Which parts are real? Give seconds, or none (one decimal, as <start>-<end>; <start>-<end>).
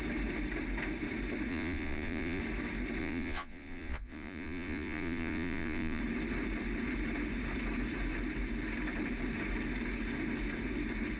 0.0-1.5; 2.4-3.0; 6.0-11.2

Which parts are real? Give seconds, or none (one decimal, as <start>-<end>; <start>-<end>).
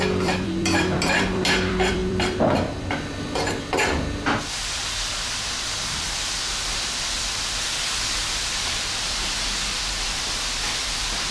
none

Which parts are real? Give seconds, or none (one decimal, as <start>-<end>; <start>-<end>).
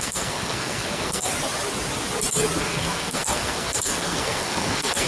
1.3-2.6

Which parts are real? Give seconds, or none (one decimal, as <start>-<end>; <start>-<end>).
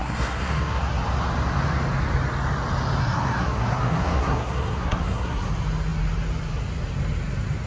0.8-3.0; 5.5-7.7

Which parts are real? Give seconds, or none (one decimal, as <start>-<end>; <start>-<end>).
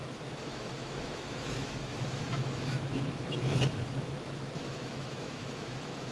none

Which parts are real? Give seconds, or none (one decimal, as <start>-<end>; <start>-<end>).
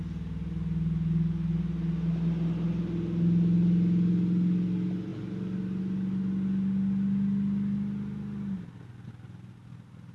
0.0-10.1